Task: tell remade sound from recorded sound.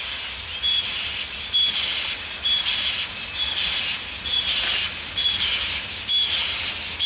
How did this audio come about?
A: recorded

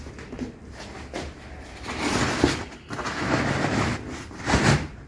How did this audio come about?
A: recorded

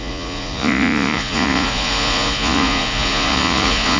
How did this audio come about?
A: remade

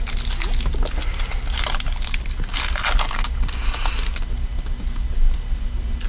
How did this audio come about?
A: recorded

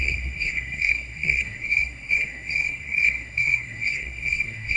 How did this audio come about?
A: remade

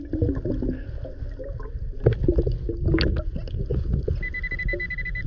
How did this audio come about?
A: recorded